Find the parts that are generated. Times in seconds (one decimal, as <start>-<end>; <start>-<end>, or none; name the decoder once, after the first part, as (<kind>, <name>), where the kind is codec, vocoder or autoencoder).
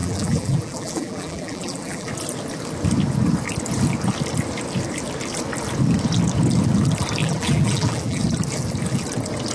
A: 0.0-2.1 (vocoder, BigVGAN v2); 7.2-8.2